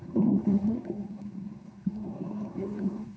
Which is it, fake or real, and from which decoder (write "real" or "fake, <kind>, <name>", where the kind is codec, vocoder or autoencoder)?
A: fake, codec, SNAC